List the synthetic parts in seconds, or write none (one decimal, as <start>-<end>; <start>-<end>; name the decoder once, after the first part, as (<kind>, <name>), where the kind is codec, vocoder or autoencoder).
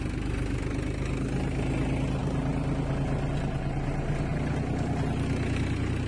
none